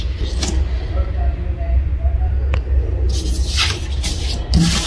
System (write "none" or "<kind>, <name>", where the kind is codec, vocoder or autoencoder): none